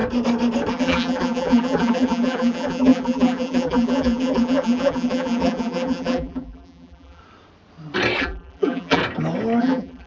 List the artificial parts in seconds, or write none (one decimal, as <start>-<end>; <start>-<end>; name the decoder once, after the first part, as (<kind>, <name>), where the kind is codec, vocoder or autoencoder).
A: 0.7-7.2 (vocoder, BigVGAN v2); 8.2-9.0; 9.6-10.1